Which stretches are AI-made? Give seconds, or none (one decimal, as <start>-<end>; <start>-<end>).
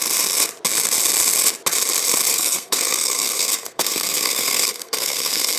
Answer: 2.3-5.6